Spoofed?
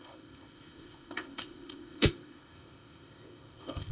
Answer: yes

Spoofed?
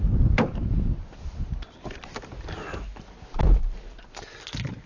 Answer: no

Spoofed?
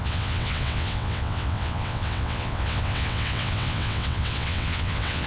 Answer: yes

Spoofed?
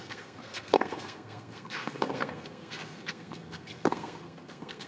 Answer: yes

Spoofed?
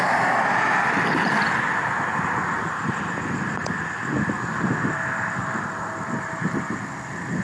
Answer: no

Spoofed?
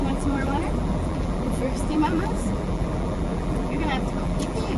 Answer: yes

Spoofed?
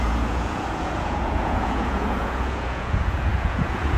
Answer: yes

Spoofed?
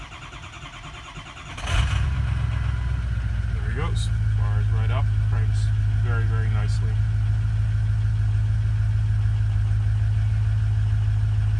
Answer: no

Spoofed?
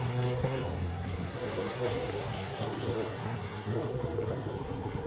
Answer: yes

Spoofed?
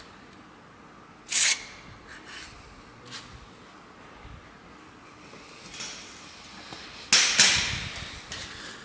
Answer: no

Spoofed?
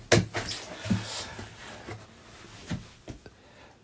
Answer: no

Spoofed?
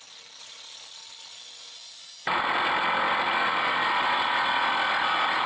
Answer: no